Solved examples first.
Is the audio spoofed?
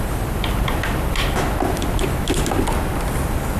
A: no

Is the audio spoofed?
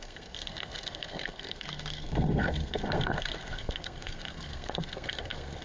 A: yes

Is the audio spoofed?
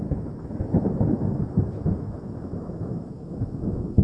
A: yes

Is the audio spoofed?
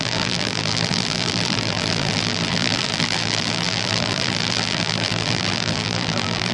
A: yes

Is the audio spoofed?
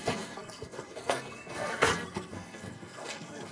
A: yes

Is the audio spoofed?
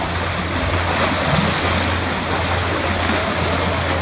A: no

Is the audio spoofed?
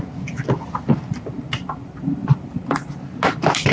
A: yes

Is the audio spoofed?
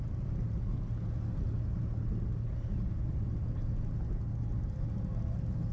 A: no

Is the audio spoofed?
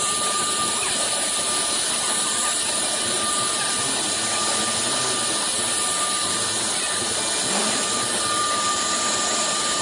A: no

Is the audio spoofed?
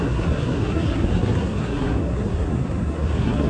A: yes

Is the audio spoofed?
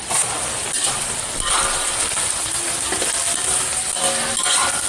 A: no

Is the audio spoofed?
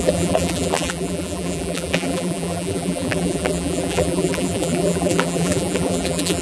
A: yes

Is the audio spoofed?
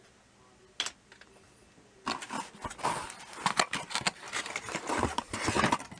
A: no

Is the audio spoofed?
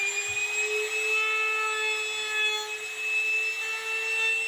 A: no